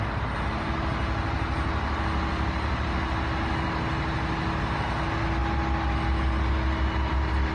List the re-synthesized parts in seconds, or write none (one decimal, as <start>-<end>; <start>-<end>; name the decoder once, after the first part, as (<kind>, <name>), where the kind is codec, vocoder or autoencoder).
none